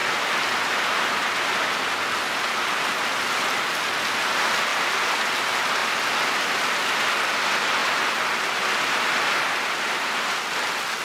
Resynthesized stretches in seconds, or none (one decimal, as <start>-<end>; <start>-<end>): 0.0-2.9; 4.7-5.3; 5.8-7.0